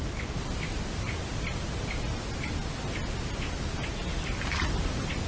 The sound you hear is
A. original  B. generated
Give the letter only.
A